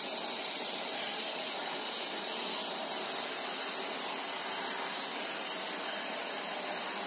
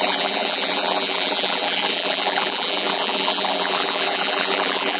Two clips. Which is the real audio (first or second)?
first